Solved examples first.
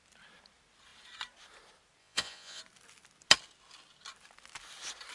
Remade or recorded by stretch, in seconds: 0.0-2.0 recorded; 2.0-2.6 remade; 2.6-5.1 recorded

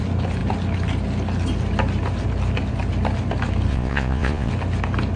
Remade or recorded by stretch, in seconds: 0.0-3.7 recorded; 3.7-4.5 remade; 4.5-5.2 recorded

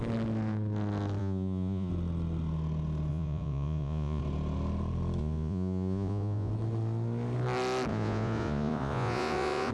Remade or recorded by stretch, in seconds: 0.0-1.2 recorded; 1.2-1.9 remade; 1.9-3.1 recorded; 3.1-4.2 remade; 4.2-5.2 recorded; 5.2-6.5 remade; 6.5-7.9 recorded; 7.9-9.7 remade

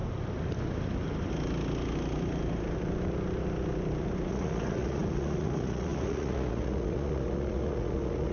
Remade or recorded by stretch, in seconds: 0.0-4.3 recorded; 4.3-8.3 remade

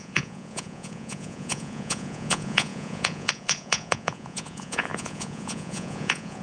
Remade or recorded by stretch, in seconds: 0.0-6.4 remade

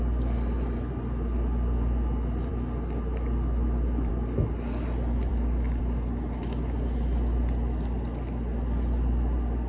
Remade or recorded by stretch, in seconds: 0.0-9.7 recorded

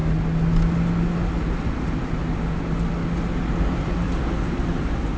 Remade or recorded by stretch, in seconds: 0.0-5.2 recorded